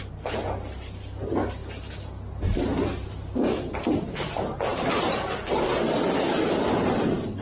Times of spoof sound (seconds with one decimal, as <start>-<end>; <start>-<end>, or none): none